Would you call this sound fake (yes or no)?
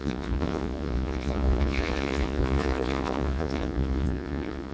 yes